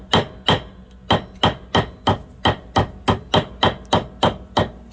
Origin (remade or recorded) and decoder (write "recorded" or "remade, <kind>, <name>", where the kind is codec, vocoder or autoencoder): recorded